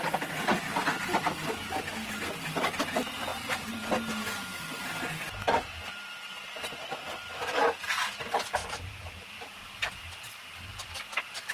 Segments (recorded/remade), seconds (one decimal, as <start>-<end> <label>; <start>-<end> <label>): 0.0-8.6 recorded; 8.6-9.3 remade; 9.3-11.5 recorded